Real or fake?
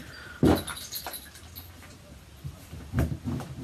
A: real